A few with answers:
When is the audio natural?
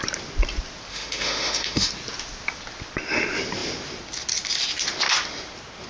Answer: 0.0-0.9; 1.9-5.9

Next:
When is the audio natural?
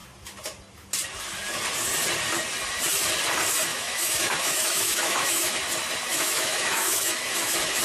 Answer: 0.0-3.7; 5.6-6.1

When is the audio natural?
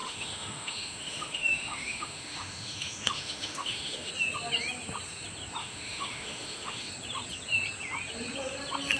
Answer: 4.1-5.6; 6.9-9.0